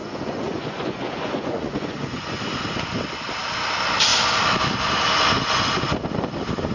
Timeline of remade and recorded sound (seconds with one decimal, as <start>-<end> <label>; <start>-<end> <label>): 0.0-2.4 remade; 2.4-6.7 recorded